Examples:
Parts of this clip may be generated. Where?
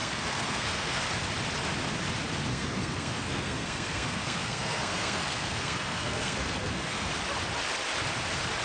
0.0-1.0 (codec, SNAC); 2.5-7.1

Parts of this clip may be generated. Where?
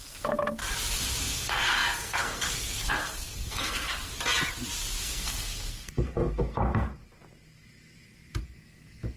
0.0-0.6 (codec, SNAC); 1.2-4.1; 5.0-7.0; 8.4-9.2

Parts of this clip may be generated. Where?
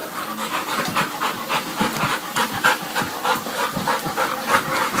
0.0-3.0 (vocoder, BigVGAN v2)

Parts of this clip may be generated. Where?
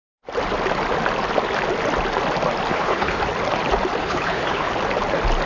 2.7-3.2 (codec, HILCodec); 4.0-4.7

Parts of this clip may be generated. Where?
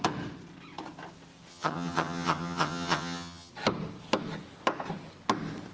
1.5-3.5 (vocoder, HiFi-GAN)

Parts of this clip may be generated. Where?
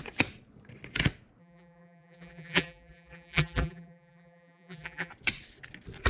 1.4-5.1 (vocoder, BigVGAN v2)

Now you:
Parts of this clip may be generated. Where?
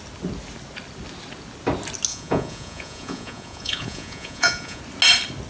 2.1-4.8 (vocoder, Vocos)